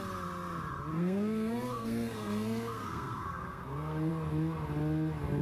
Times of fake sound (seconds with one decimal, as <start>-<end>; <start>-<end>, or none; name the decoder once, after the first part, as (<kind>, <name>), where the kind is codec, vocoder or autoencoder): 0.9-4.1 (codec, SNAC)